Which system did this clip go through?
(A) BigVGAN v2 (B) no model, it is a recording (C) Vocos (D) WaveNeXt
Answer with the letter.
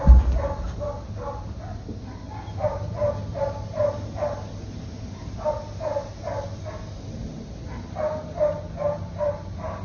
B